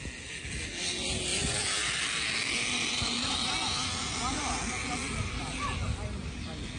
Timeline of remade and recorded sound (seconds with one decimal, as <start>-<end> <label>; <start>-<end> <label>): 0.0-6.8 recorded